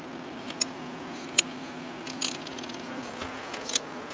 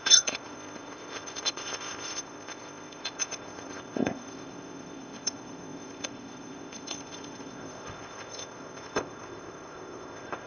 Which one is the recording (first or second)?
first